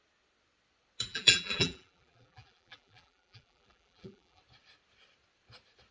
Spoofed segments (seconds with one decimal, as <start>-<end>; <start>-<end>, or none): 1.1-4.4

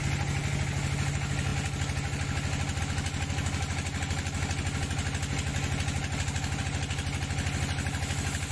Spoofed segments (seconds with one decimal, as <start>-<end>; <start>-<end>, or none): none

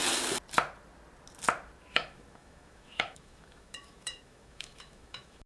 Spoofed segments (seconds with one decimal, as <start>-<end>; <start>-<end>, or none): 1.9-5.5

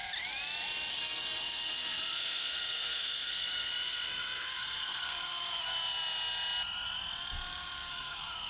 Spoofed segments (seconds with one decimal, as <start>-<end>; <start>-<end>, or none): 0.9-5.7; 7.9-8.5

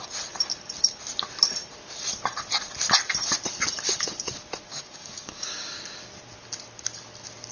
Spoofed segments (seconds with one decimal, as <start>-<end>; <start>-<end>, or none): 4.7-5.5